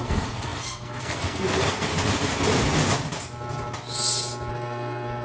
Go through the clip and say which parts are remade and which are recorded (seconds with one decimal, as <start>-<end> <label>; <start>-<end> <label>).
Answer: 0.0-1.9 remade; 1.9-4.5 recorded; 4.5-5.2 remade